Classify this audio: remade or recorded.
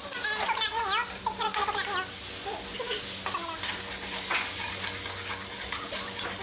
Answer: recorded